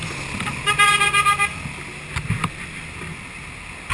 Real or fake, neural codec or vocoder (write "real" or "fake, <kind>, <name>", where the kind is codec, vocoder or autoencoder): real